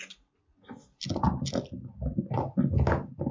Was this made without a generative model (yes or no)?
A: yes